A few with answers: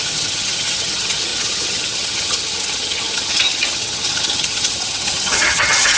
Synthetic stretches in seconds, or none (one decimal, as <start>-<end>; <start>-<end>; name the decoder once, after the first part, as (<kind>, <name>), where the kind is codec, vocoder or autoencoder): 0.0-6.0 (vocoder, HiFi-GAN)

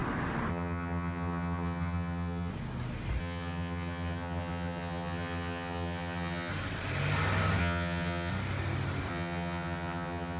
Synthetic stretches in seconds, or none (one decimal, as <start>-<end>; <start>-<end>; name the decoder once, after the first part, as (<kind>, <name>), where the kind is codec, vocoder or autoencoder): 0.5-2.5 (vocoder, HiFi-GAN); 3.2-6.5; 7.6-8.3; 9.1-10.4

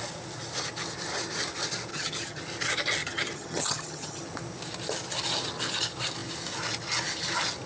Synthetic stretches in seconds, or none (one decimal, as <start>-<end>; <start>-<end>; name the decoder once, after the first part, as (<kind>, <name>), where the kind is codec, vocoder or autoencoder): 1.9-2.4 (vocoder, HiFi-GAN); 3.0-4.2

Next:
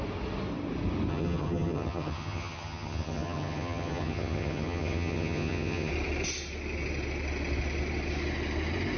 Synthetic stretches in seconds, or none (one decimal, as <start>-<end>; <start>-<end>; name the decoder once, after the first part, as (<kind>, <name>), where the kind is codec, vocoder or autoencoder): 1.1-5.9 (vocoder, HiFi-GAN)